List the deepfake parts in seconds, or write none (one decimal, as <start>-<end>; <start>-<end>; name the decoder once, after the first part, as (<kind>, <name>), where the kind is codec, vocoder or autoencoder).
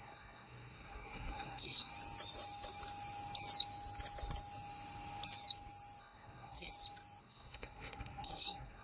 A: 0.0-1.9 (codec, SNAC); 6.0-6.7; 7.2-8.8